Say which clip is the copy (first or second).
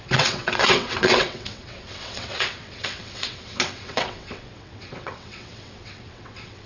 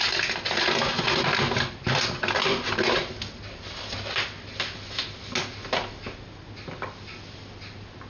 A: first